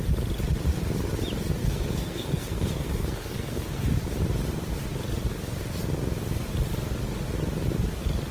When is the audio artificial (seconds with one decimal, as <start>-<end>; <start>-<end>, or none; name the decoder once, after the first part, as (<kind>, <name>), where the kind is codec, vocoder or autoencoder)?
1.6-3.9 (codec, SNAC)